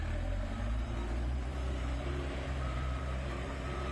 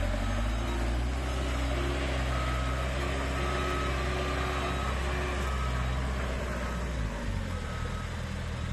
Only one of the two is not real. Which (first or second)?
first